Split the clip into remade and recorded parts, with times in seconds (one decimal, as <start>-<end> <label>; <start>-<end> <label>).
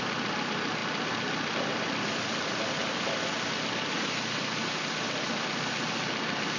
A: 0.0-6.6 recorded